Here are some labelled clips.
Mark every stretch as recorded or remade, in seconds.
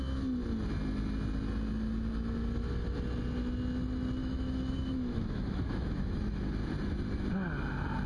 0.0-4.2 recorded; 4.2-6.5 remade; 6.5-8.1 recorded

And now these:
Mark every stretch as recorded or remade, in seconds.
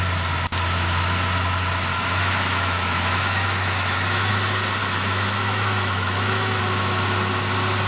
0.0-1.9 recorded; 1.9-4.3 remade; 4.3-4.8 recorded; 4.8-6.6 remade; 6.6-7.9 recorded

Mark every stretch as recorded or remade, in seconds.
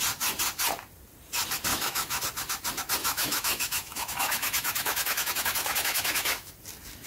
0.0-1.7 recorded; 1.7-2.2 remade; 2.2-3.0 recorded; 3.0-6.5 remade; 6.5-7.1 recorded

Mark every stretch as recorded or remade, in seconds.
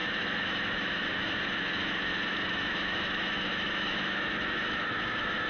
0.0-5.5 remade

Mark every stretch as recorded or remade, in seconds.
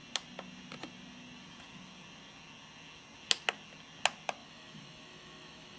0.0-4.4 recorded; 4.4-5.8 remade